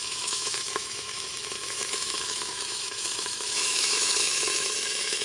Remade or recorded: remade